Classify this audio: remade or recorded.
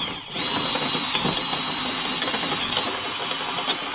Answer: recorded